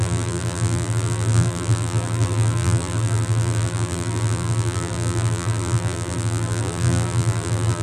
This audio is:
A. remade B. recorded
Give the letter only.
A